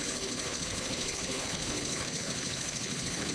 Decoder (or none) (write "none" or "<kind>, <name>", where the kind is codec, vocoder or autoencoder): codec, HILCodec